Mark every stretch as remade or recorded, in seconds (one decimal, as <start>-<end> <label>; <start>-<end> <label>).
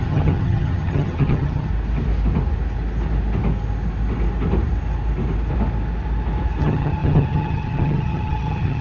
0.0-1.7 remade; 1.7-6.6 recorded; 6.6-8.8 remade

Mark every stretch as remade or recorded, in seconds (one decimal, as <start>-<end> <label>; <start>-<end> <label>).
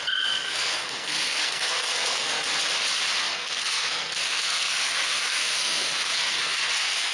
0.0-2.5 remade; 2.5-3.2 recorded; 3.2-7.1 remade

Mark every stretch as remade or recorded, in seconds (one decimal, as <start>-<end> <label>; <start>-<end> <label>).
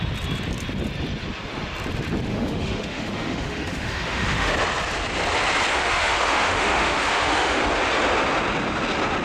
0.0-2.3 recorded; 2.3-4.5 remade; 4.5-5.7 recorded; 5.7-7.6 remade; 7.6-9.2 recorded